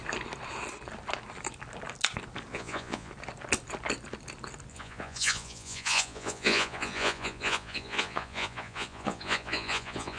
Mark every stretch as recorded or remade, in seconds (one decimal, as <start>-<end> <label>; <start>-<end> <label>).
0.0-2.5 recorded; 2.5-3.1 remade; 3.1-4.7 recorded; 4.7-10.2 remade